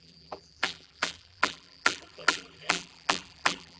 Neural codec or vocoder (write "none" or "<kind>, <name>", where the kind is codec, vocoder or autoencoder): vocoder, BigVGAN v2